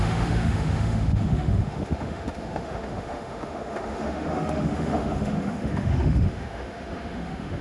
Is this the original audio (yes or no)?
no